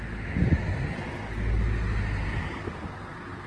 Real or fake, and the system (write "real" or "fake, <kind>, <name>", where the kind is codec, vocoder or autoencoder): real